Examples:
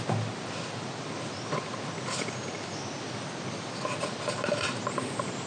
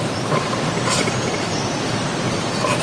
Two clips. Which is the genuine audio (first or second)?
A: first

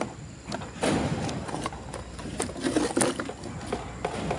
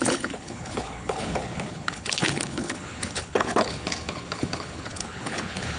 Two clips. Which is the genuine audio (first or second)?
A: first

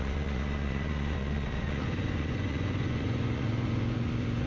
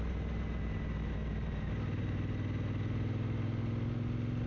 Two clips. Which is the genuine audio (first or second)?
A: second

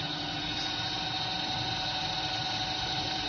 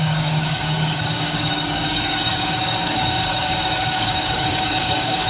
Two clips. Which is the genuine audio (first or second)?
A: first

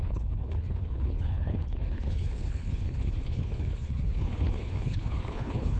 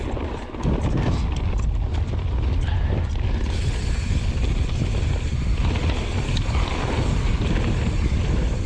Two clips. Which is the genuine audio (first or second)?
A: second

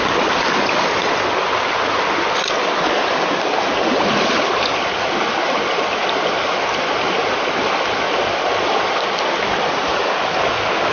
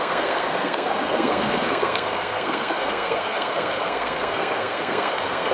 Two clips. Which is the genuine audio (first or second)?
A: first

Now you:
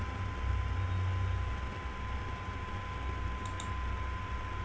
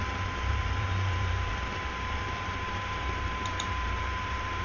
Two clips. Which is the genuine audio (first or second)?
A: first